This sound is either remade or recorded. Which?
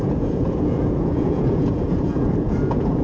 remade